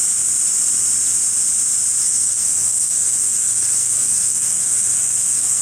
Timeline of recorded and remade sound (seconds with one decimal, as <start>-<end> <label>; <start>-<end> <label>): 0.0-2.0 recorded; 2.0-5.6 remade